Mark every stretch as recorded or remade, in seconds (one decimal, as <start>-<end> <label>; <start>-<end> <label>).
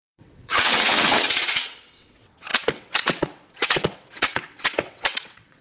0.0-5.6 remade